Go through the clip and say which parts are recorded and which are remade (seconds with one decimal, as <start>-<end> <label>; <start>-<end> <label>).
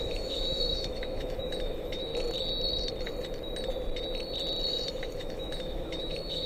0.0-2.1 remade; 2.1-5.0 recorded; 5.0-6.5 remade